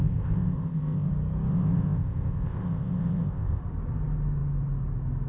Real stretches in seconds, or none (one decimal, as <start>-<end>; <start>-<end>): 1.1-1.5; 3.6-5.3